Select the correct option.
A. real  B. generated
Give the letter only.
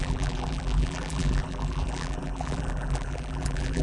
B